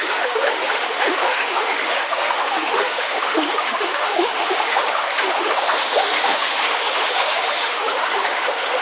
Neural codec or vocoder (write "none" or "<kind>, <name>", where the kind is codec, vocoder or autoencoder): autoencoder, DAC-VAE